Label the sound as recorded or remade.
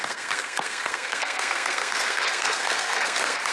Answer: remade